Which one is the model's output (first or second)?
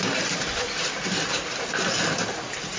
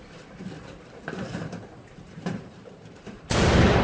second